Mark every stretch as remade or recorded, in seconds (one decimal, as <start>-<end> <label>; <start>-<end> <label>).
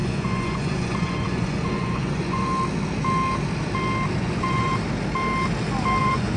0.0-2.5 remade; 2.5-4.2 recorded; 4.2-4.7 remade; 4.7-6.0 recorded; 6.0-6.4 remade